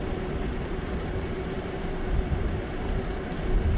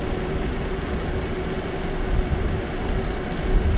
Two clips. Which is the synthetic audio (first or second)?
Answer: first